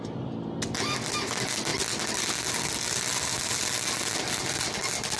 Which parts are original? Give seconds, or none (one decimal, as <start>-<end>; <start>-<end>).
0.0-5.2